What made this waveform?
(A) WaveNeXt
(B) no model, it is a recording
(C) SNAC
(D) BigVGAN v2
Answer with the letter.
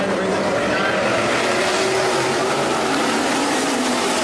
D